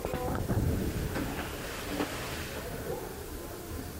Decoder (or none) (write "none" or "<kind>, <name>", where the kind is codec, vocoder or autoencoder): none